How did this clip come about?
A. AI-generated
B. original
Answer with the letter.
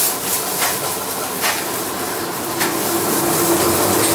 B